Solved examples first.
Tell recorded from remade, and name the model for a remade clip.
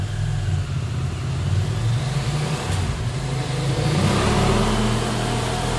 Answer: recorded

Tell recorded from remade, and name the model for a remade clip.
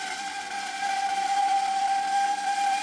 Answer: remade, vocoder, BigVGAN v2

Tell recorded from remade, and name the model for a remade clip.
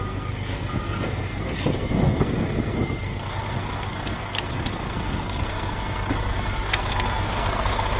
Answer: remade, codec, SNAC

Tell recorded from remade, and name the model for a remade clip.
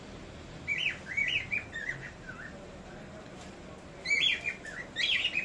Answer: recorded